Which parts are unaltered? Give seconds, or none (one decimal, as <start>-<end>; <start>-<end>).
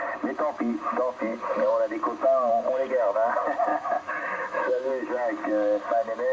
0.0-3.7; 4.9-6.3